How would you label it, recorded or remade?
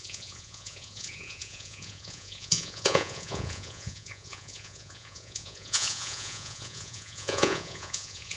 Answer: remade